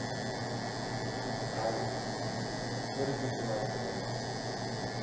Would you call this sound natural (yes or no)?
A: yes